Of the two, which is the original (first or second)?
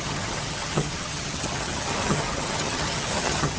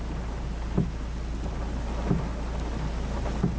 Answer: second